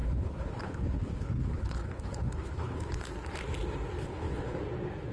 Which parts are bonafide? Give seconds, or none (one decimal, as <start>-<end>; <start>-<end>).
3.1-4.0; 4.6-5.1